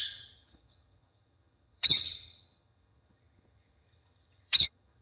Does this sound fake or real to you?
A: fake